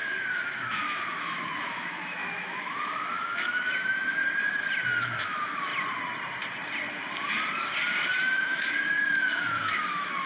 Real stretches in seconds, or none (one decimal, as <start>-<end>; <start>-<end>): 4.2-5.0; 5.7-8.2